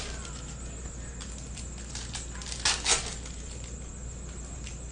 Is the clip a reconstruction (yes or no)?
no